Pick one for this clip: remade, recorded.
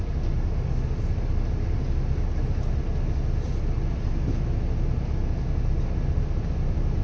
recorded